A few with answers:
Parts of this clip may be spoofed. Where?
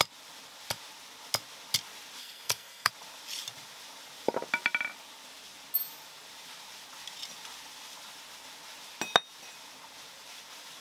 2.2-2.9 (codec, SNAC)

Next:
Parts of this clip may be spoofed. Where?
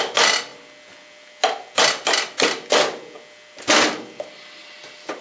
none